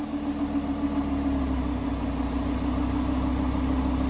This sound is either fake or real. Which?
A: real